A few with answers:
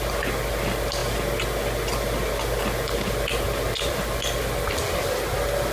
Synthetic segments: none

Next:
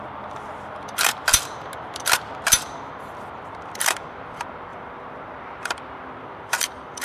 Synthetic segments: 0.0-1.1 (vocoder, BigVGAN v2); 3.0-7.0